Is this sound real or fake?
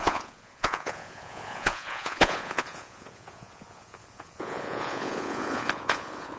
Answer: fake